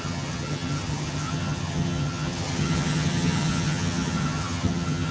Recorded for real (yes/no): no